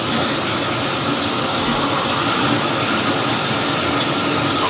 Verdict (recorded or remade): recorded